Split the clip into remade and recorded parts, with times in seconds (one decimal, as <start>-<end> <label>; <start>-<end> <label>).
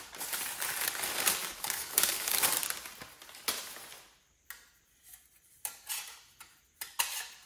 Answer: 0.0-1.4 recorded; 1.4-2.5 remade; 2.5-7.5 recorded